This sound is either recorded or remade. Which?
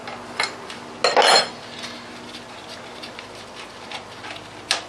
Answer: recorded